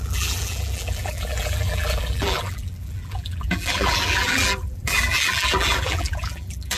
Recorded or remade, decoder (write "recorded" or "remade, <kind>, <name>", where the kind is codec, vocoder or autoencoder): remade, vocoder, BigVGAN v2